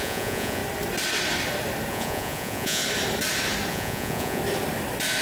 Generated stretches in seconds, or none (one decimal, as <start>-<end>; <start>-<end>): 0.0-0.6; 1.9-2.8; 3.7-4.4